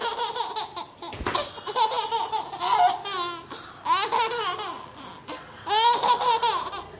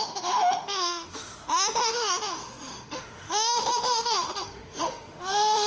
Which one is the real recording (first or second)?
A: first